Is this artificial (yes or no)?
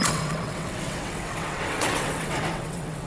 yes